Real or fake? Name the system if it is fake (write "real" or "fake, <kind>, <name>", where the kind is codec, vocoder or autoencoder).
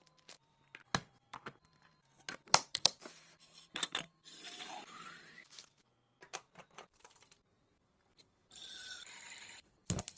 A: fake, vocoder, BigVGAN v2